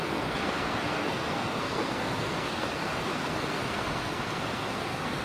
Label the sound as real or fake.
fake